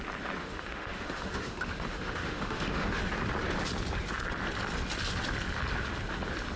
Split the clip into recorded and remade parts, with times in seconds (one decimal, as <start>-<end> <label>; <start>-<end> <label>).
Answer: 0.0-0.4 recorded; 0.4-3.1 remade; 3.1-6.6 recorded